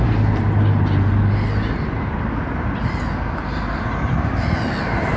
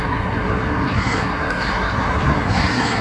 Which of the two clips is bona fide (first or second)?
first